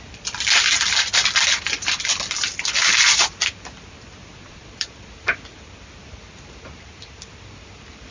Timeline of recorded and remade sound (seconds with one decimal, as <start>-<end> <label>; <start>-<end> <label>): 0.0-4.4 recorded; 4.4-5.1 remade; 5.1-8.1 recorded